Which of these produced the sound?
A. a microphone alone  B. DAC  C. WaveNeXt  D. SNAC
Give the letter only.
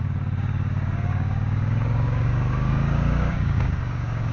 B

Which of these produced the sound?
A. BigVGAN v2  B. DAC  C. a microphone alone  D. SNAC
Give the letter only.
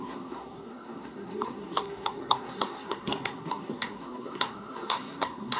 D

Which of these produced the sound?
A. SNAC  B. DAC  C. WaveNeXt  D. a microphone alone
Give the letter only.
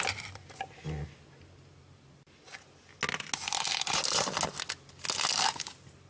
D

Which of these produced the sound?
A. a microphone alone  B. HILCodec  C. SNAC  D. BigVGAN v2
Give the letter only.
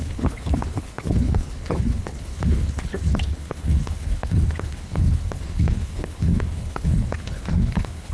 B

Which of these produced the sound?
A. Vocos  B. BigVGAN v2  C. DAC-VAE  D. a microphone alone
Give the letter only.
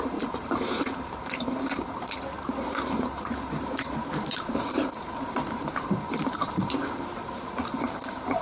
B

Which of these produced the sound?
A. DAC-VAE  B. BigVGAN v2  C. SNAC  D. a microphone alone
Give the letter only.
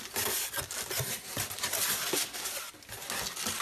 D